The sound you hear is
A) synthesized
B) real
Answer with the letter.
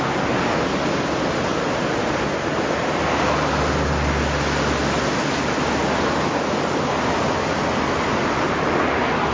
B